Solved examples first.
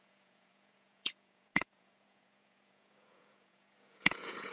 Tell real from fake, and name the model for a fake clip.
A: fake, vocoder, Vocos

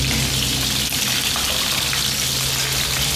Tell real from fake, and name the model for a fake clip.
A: real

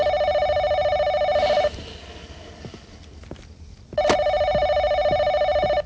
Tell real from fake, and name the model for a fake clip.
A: real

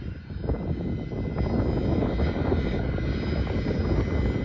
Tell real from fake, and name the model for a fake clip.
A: real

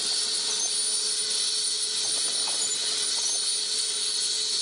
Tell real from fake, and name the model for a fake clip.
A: real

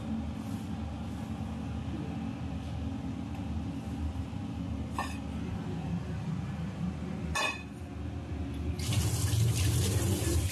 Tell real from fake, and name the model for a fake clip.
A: real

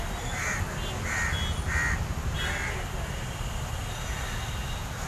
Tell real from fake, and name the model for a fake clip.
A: real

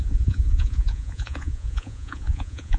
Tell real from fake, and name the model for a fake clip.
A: fake, vocoder, Vocos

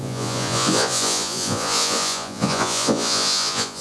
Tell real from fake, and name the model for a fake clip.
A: fake, vocoder, Vocos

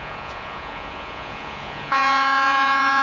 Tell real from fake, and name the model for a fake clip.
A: fake, vocoder, Vocos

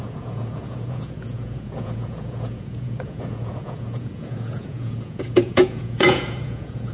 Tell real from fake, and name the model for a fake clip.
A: fake, vocoder, Vocos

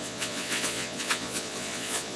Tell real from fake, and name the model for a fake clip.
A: fake, vocoder, Vocos